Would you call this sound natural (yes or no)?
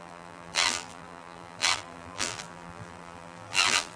no